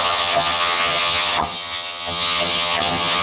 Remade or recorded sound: remade